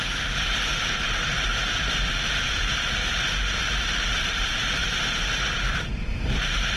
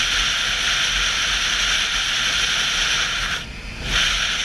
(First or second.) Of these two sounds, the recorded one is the second